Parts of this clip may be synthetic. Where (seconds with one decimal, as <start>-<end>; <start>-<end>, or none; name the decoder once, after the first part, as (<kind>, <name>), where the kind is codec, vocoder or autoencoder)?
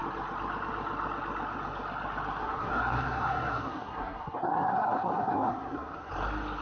2.4-6.1 (codec, SNAC)